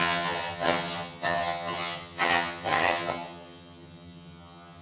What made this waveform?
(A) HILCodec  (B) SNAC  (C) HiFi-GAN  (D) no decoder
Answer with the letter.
C